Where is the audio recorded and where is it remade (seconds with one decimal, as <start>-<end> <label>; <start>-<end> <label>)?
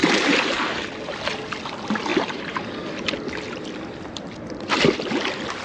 0.0-0.9 remade; 0.9-2.1 recorded; 2.1-2.7 remade; 2.7-5.6 recorded